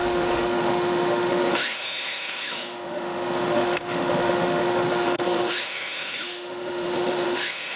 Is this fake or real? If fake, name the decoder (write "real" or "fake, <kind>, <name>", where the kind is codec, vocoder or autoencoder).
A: fake, autoencoder, DAC-VAE